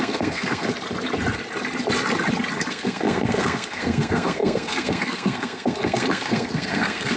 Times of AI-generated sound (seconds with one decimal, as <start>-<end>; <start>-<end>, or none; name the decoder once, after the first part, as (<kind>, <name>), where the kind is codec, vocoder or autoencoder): 0.0-0.7 (codec, SNAC); 2.7-7.2